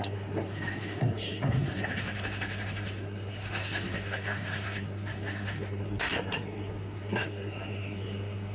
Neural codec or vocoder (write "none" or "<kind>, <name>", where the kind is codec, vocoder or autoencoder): codec, SNAC